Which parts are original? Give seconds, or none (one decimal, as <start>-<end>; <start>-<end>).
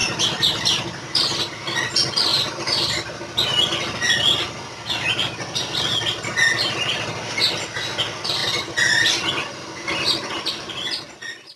1.1-2.3; 3.3-11.6